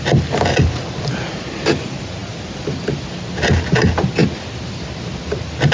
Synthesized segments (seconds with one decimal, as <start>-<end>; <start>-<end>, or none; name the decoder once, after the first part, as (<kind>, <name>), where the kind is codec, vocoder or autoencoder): none